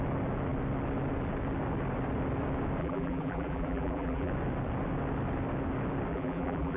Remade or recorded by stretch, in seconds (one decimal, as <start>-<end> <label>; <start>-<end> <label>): 0.0-2.8 recorded; 2.8-4.3 remade; 4.3-6.1 recorded; 6.1-6.8 remade